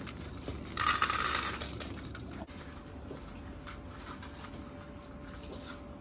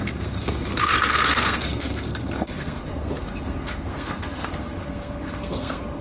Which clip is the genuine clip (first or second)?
first